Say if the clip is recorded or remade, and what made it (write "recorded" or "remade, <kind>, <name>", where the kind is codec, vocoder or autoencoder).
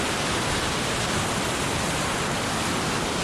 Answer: recorded